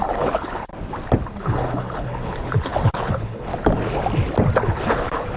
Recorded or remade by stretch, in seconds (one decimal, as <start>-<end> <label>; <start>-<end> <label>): 0.0-0.7 remade; 0.7-1.4 recorded; 1.4-3.5 remade; 3.5-4.6 recorded; 4.6-5.4 remade